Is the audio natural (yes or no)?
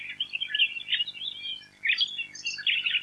yes